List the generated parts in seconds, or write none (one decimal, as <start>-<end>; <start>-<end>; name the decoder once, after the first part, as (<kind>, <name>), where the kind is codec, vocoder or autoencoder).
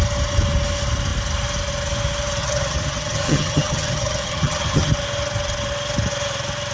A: 2.4-4.9 (vocoder, HiFi-GAN)